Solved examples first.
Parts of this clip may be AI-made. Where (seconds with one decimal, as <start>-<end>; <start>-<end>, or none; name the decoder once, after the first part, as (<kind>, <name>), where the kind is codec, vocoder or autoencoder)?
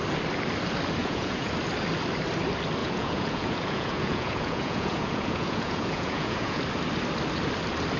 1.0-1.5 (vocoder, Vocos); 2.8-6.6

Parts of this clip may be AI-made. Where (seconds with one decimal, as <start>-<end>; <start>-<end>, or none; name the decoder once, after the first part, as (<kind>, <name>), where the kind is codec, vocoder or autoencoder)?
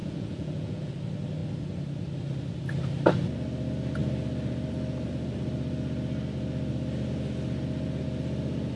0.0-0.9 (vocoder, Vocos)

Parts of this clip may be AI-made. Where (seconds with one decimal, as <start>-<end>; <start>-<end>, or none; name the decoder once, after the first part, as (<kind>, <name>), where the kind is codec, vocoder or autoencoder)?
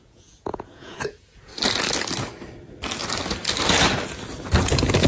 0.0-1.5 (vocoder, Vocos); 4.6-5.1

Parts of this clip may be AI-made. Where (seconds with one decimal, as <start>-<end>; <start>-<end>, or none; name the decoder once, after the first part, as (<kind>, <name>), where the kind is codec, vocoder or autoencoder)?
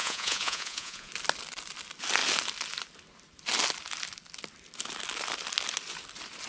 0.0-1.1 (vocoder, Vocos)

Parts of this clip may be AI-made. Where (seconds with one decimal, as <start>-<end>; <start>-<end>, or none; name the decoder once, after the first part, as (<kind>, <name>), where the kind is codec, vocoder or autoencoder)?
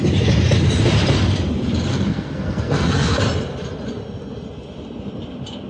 1.9-3.2 (codec, SNAC)